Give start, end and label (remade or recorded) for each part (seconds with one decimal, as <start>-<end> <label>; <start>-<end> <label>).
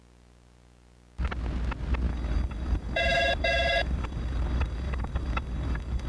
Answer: 0.0-2.1 recorded; 2.1-6.1 remade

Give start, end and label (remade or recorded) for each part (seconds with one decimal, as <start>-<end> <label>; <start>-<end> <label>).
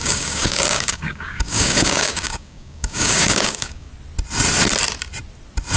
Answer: 0.0-3.9 remade; 3.9-5.8 recorded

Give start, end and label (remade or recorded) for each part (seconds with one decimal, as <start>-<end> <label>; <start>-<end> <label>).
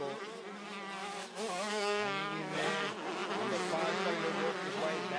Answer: 0.0-1.0 recorded; 1.0-2.8 remade; 2.8-5.2 recorded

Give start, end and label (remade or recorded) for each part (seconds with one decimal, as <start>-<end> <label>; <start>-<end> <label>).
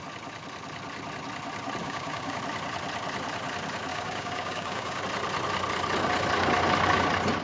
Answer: 0.0-1.8 recorded; 1.8-2.4 remade; 2.4-3.9 recorded; 3.9-5.0 remade; 5.0-7.4 recorded